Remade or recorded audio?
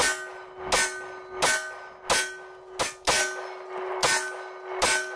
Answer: recorded